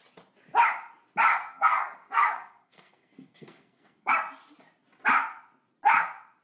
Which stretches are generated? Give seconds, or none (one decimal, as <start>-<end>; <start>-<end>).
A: 1.3-4.1